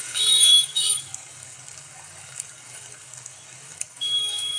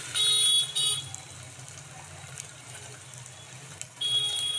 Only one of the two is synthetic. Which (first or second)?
first